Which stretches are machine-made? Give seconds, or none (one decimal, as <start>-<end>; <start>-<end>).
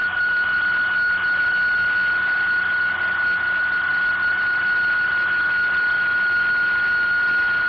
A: none